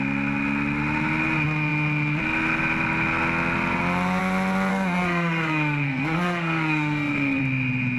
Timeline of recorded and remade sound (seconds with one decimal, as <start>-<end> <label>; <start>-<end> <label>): 0.0-4.7 recorded; 4.7-7.4 remade; 7.4-8.0 recorded